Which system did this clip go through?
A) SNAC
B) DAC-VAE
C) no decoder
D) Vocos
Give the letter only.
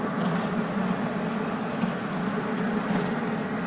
C